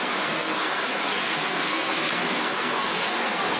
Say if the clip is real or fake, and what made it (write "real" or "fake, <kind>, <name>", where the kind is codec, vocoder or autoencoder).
fake, codec, SNAC